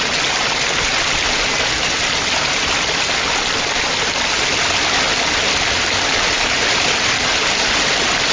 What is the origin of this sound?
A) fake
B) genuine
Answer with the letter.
B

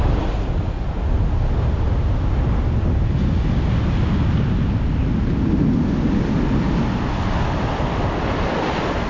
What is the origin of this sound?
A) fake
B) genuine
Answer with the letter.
B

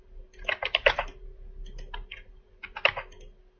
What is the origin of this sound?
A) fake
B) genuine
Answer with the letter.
B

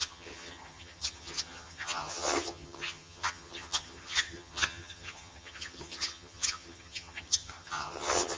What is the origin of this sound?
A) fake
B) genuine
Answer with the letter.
A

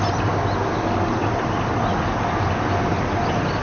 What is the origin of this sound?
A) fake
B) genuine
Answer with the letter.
B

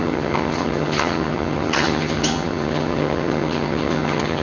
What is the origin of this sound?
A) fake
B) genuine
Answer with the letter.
A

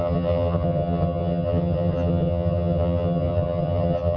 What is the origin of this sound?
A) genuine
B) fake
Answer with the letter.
B